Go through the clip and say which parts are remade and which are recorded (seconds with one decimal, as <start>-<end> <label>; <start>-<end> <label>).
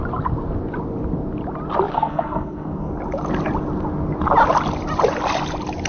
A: 0.0-1.9 recorded; 1.9-2.9 remade; 2.9-5.9 recorded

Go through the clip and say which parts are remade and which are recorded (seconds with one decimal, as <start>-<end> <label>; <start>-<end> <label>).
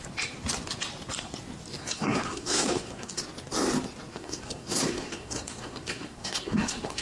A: 0.0-1.8 recorded; 1.8-3.2 remade; 3.2-4.1 recorded; 4.1-7.0 remade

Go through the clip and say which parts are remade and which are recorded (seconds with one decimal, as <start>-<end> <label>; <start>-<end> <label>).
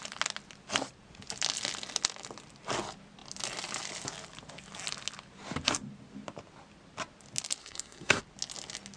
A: 0.0-7.6 recorded; 7.6-8.2 remade; 8.2-9.0 recorded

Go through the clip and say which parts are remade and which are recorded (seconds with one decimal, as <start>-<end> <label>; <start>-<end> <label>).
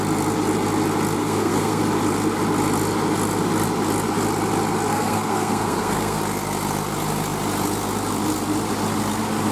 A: 0.0-1.2 recorded; 1.2-1.8 remade; 1.8-4.9 recorded; 4.9-6.2 remade; 6.2-9.5 recorded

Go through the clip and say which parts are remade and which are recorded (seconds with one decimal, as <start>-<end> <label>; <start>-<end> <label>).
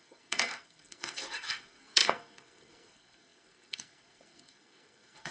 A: 0.0-5.3 remade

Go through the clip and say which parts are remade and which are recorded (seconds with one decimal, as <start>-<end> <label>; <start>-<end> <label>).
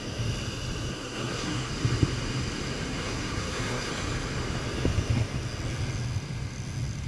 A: 0.0-0.9 recorded; 0.9-1.7 remade; 1.7-2.9 recorded; 2.9-3.9 remade; 3.9-7.1 recorded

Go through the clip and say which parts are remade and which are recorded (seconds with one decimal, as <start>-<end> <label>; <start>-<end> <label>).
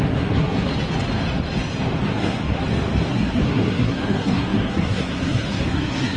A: 0.0-0.7 remade; 0.7-2.1 recorded; 2.1-2.6 remade; 2.6-3.1 recorded; 3.1-6.2 remade